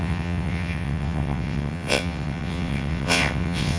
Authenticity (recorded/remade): remade